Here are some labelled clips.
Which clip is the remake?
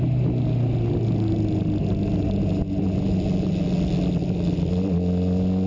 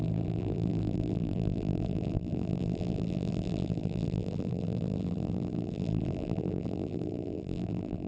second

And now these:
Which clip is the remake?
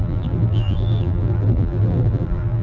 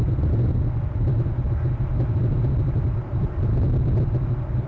first